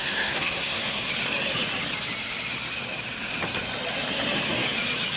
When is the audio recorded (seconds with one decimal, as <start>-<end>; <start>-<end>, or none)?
1.1-5.2